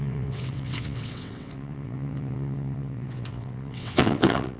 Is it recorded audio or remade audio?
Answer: remade